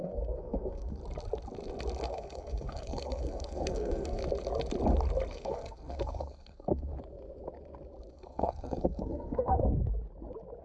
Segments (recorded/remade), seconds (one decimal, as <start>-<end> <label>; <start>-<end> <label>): 0.0-1.0 remade; 1.0-2.0 recorded; 2.0-4.2 remade; 4.2-5.3 recorded; 5.3-6.9 remade; 6.9-8.1 recorded; 8.1-9.6 remade; 9.6-10.6 recorded

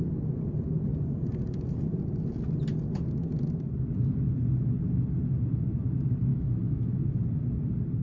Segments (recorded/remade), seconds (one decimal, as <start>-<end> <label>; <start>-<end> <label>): 0.0-6.3 recorded; 6.3-7.1 remade; 7.1-8.0 recorded

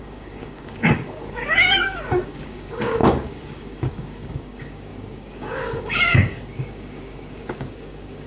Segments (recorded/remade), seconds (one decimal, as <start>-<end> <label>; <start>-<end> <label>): 0.0-8.3 remade